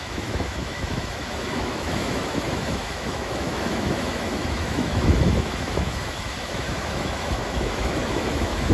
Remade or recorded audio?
remade